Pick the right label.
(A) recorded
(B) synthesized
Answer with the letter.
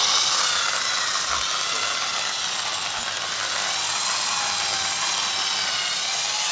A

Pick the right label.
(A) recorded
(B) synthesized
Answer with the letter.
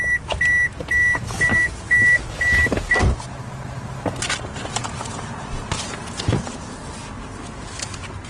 A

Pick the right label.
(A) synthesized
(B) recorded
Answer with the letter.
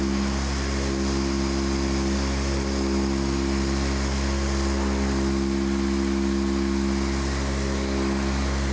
B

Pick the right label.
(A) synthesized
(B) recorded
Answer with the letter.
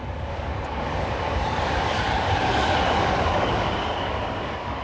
A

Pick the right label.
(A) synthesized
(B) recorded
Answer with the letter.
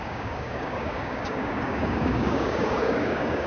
A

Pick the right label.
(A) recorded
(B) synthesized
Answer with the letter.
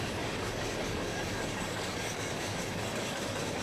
B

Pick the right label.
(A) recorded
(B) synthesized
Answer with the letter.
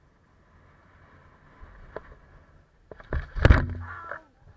A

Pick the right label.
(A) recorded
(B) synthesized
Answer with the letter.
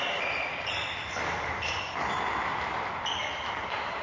A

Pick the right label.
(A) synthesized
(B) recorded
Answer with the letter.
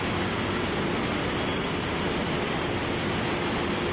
B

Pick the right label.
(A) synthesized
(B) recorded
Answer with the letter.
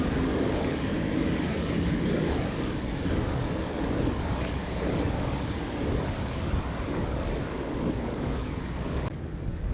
A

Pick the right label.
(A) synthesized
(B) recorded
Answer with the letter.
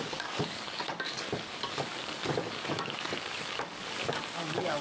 A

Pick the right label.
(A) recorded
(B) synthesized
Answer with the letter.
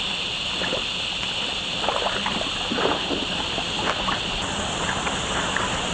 A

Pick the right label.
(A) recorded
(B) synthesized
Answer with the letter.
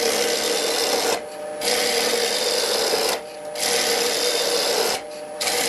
A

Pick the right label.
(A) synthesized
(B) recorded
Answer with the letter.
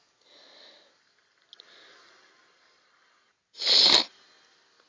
B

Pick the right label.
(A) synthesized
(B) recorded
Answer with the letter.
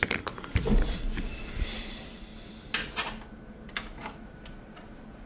B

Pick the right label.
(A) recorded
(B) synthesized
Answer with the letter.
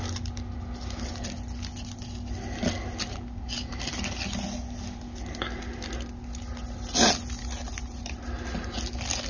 A